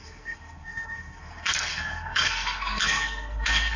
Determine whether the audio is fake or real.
fake